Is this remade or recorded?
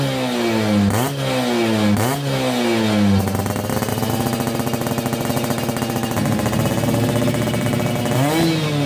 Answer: recorded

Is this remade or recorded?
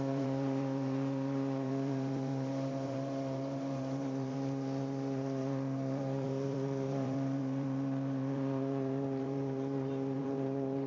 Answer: remade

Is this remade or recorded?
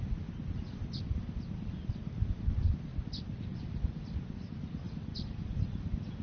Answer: recorded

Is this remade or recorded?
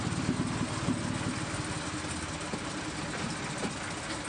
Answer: recorded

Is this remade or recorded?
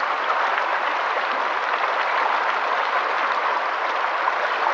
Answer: recorded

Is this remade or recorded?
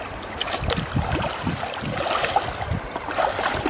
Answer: recorded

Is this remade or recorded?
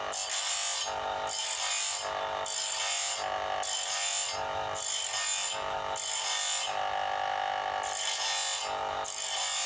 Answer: recorded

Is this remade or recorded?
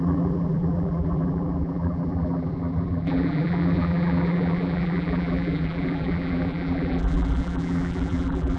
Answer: remade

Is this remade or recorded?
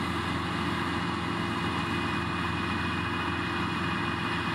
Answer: recorded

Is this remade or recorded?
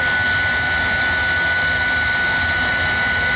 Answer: recorded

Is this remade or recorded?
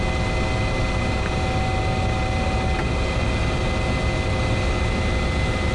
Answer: recorded